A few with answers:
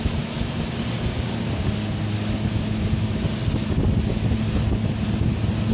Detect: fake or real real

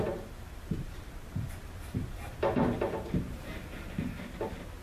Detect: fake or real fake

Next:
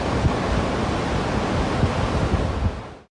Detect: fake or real real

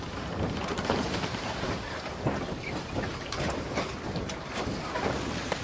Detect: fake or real fake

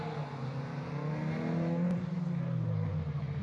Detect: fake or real real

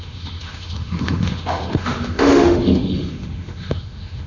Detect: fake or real fake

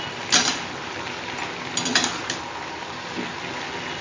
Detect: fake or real real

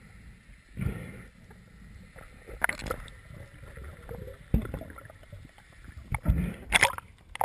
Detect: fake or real real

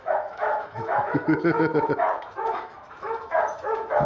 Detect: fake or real fake